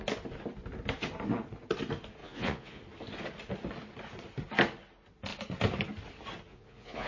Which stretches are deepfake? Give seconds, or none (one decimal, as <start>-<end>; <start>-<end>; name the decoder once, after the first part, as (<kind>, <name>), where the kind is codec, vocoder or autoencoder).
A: 2.2-2.8 (vocoder, Vocos); 6.5-7.1